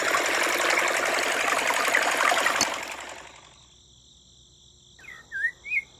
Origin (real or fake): real